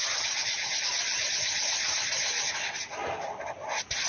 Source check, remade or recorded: recorded